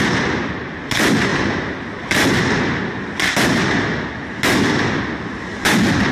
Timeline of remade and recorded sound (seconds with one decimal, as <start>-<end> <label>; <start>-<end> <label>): 0.0-6.1 recorded